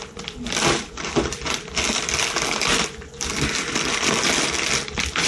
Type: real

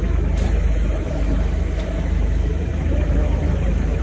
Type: fake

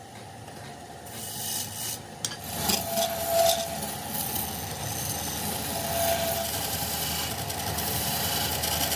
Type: real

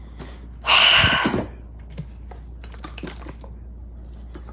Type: real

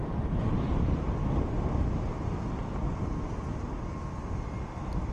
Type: real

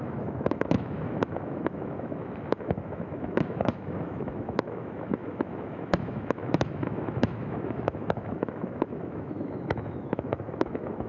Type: fake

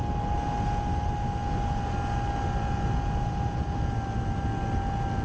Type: real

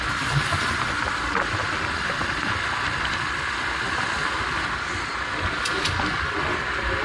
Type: real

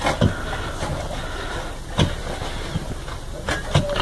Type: real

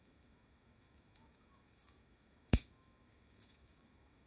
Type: fake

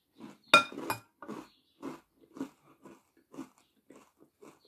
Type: real